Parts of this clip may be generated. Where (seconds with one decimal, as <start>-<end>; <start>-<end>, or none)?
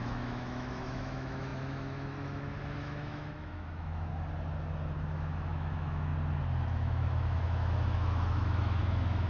0.0-4.1; 5.0-6.1; 6.6-9.3